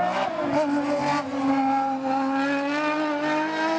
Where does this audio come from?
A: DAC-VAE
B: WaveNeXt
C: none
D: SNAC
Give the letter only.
C